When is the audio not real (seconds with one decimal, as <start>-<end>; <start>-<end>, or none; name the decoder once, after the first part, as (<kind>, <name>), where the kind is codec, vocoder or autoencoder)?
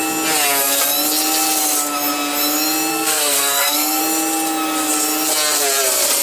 2.9-4.0 (codec, SNAC)